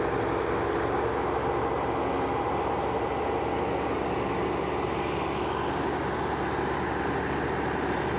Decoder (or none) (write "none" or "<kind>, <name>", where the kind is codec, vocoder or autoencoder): none